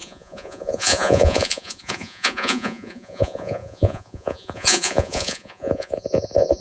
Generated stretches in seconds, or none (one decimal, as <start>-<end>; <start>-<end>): 0.0-6.6